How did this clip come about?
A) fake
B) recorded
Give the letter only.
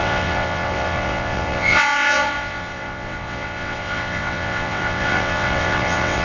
A